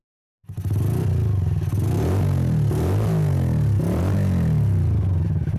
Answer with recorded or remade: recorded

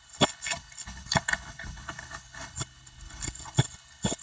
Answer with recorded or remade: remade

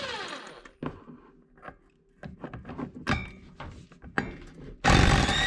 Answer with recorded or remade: recorded